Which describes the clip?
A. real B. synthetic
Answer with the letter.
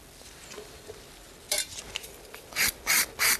B